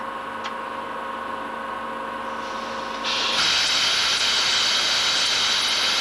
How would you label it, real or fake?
real